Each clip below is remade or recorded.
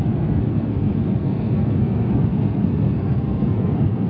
remade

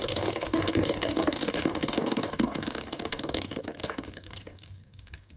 remade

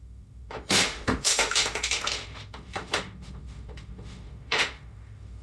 remade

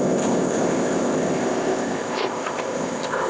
remade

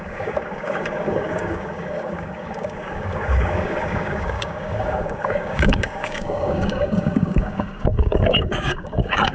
remade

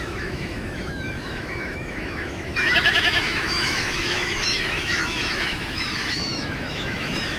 remade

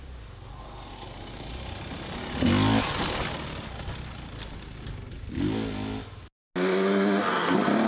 recorded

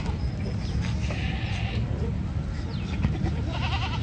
recorded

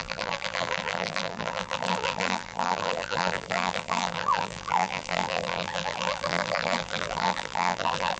remade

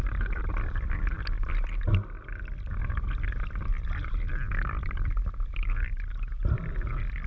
recorded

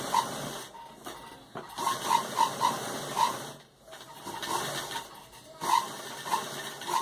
recorded